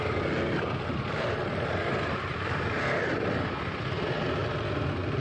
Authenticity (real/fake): real